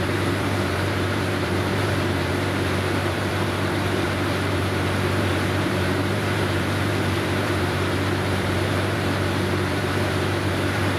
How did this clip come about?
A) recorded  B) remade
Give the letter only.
B